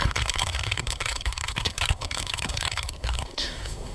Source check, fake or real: fake